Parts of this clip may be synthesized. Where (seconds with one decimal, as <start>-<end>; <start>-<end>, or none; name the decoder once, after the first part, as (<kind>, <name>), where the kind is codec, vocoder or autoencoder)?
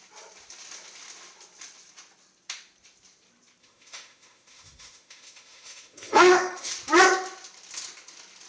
3.6-6.7 (autoencoder, DAC-VAE)